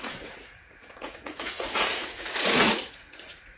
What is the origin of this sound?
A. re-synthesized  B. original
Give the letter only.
A